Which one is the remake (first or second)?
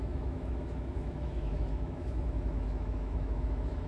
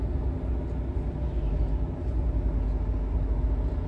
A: first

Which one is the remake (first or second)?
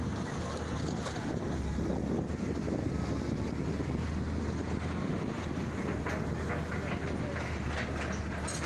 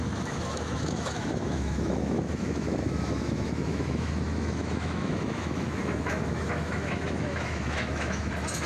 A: second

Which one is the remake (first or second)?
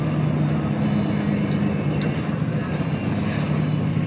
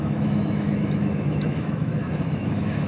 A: second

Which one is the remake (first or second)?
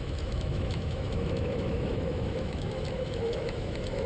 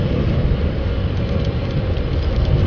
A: first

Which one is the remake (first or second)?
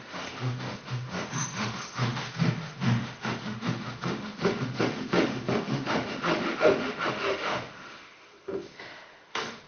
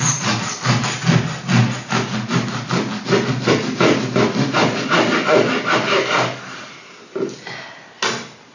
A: first